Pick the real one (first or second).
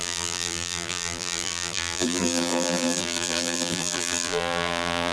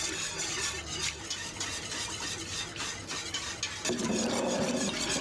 second